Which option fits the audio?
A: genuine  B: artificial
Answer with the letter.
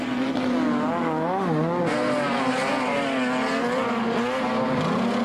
A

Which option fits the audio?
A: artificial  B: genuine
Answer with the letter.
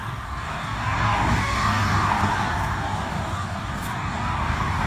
A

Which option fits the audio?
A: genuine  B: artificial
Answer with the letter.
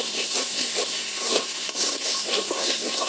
B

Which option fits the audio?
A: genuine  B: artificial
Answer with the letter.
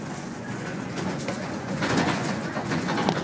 B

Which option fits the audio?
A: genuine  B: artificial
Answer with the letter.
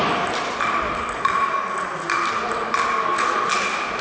A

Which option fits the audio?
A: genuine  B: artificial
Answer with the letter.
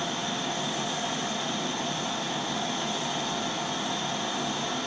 A